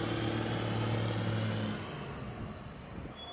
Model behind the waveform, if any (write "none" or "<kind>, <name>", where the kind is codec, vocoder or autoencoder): none